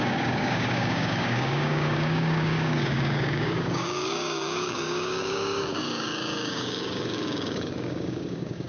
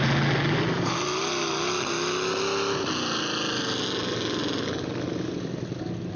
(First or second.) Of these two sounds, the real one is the second